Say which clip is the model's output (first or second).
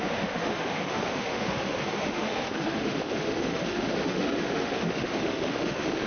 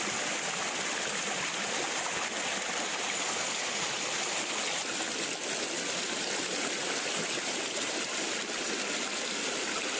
first